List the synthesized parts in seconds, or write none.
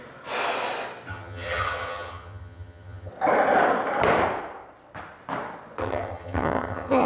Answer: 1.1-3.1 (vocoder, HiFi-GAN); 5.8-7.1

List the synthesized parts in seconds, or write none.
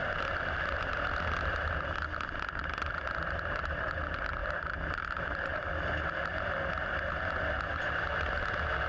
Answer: none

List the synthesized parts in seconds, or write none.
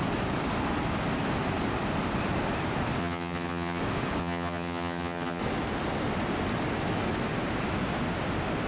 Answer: 3.0-3.8 (vocoder, HiFi-GAN); 4.2-5.4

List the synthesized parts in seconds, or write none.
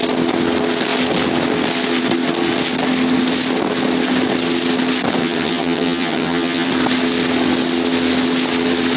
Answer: 5.2-6.7 (vocoder, HiFi-GAN)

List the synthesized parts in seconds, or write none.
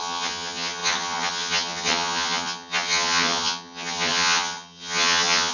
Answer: 0.0-5.5 (vocoder, HiFi-GAN)